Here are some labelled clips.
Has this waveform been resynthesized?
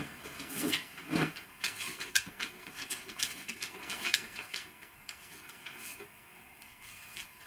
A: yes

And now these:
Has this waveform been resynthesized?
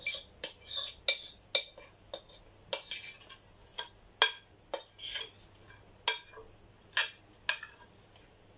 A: no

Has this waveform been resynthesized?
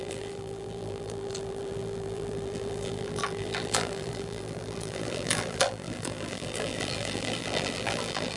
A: yes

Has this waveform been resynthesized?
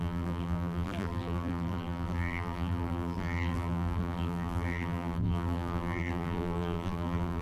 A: yes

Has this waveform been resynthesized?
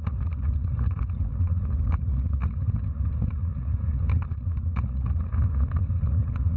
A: yes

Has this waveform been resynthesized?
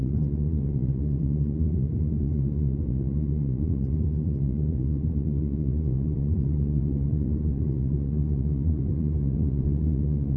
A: yes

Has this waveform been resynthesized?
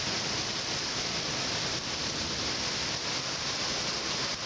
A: no